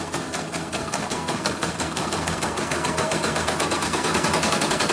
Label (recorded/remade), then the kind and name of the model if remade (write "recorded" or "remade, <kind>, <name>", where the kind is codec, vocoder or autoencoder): remade, codec, SNAC